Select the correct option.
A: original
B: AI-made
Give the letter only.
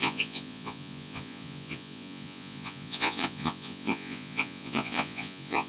B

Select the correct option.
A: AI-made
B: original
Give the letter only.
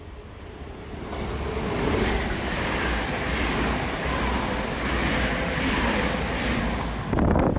B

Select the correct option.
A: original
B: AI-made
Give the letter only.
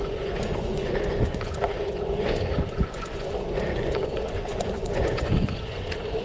B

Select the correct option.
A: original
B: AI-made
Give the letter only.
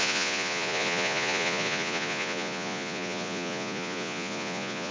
B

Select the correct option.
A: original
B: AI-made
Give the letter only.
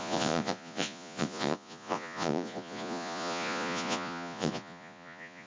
B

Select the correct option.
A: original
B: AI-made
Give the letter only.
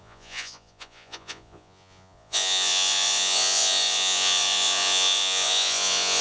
B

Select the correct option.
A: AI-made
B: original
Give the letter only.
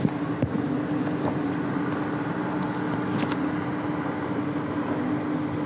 B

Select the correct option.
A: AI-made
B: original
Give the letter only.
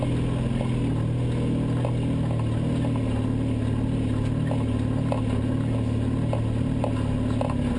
B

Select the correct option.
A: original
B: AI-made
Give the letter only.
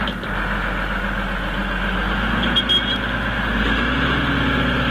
A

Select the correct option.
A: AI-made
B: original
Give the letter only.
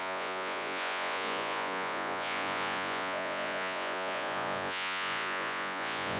A